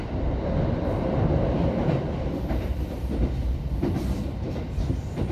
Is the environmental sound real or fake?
real